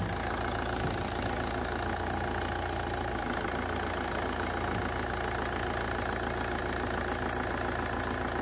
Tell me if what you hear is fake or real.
real